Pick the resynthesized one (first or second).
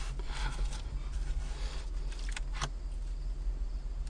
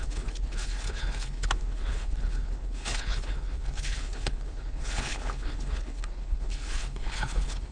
second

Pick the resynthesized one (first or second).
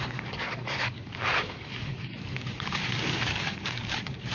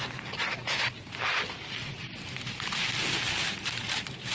first